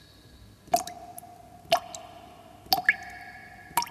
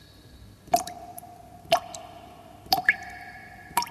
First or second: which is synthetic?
second